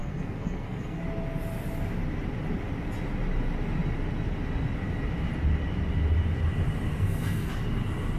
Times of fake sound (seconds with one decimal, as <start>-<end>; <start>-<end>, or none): 0.0-1.0; 6.9-7.5